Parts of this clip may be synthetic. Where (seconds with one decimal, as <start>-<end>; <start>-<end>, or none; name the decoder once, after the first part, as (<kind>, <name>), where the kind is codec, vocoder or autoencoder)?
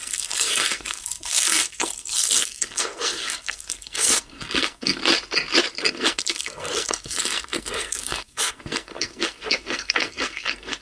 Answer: 0.0-5.0 (codec, SNAC); 5.9-10.8